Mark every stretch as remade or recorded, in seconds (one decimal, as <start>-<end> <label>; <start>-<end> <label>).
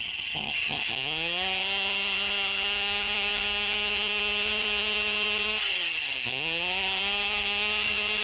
0.0-8.2 remade